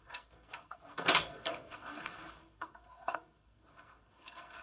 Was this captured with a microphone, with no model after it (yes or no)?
no